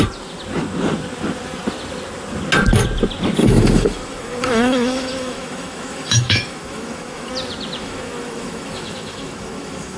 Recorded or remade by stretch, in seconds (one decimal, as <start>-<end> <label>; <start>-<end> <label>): 0.0-3.4 recorded; 3.4-7.3 remade; 7.3-7.8 recorded; 7.8-10.0 remade